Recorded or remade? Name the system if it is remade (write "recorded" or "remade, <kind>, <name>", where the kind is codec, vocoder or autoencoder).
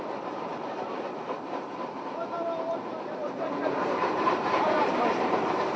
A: remade, vocoder, BigVGAN v2